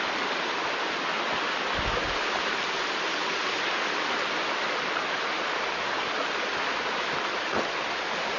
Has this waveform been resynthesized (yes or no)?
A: no